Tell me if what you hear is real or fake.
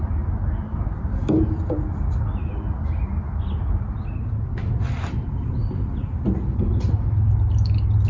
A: real